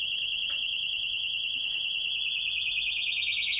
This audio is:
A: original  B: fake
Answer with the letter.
A